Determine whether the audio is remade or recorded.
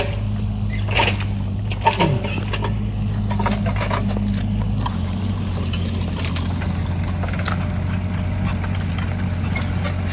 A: recorded